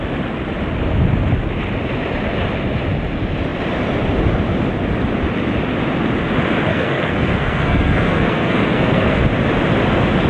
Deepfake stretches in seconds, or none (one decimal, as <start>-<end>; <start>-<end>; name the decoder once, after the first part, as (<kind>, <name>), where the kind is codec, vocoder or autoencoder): 6.7-9.2 (codec, SNAC)